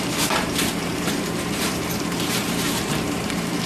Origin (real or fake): fake